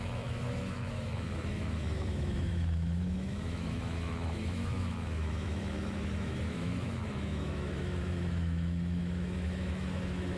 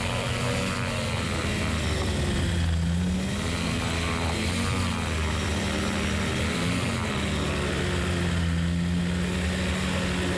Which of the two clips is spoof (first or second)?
first